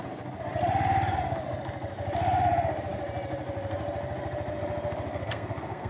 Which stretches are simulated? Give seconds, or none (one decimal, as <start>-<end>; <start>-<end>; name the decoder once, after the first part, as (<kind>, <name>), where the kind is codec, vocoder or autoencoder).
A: 5.1-5.9 (codec, SNAC)